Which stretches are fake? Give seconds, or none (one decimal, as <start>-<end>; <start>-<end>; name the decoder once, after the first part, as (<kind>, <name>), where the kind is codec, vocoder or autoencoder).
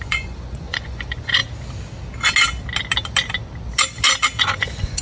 0.0-1.4 (vocoder, Vocos); 4.4-5.0